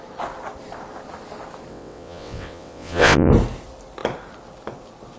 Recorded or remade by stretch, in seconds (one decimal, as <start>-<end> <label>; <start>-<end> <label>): 0.0-1.7 recorded; 1.7-3.3 remade; 3.3-5.2 recorded

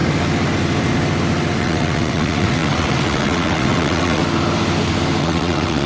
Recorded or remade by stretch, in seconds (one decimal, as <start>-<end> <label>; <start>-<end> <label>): 0.0-1.6 recorded; 1.6-4.2 remade; 4.2-5.2 recorded; 5.2-5.9 remade